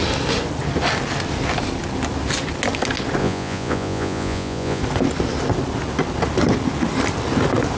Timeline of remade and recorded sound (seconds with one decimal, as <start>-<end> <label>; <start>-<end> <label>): 0.0-3.2 recorded; 3.2-4.8 remade; 4.8-7.8 recorded